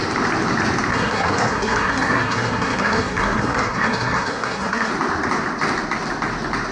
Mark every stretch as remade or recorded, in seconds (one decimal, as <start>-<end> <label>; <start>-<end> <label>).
0.0-0.9 recorded; 0.9-4.9 remade; 4.9-6.7 recorded